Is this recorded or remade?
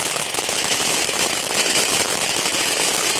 remade